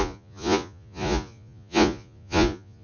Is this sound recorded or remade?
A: remade